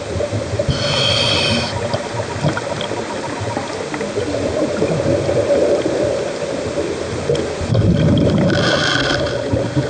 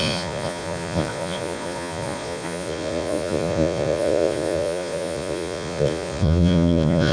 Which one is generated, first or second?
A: second